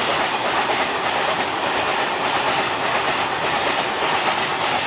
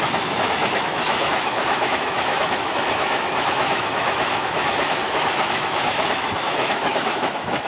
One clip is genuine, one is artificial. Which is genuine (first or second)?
first